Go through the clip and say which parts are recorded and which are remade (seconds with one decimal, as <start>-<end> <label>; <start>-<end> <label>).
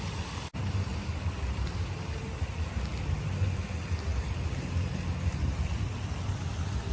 0.0-4.1 recorded; 4.1-6.5 remade; 6.5-6.9 recorded